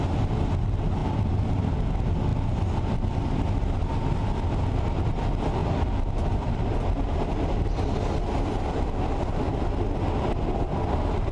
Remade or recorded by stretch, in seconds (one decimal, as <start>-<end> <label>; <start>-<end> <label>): 0.0-1.0 recorded; 1.0-1.7 remade; 1.7-5.6 recorded; 5.6-6.6 remade; 6.6-11.3 recorded